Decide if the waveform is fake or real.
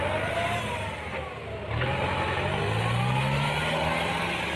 real